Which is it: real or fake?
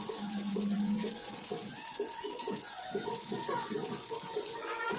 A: fake